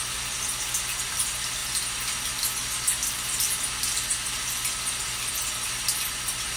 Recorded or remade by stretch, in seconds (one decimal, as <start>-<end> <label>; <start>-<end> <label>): 0.0-6.6 recorded